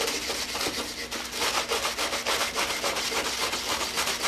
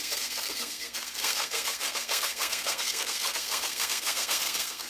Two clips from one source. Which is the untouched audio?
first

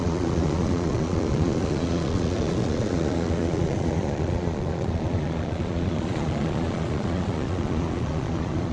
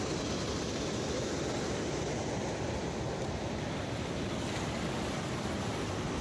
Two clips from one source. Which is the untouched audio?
second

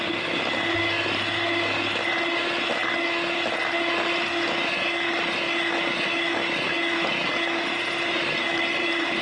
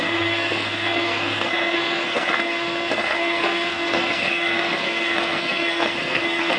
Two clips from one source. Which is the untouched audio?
first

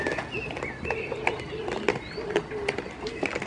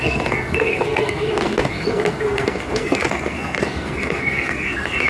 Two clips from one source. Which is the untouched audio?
first